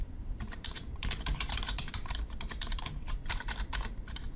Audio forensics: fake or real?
fake